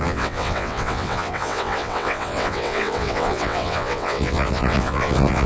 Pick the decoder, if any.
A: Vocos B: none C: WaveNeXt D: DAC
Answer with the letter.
C